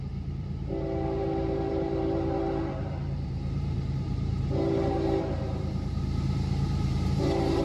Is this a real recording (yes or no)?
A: no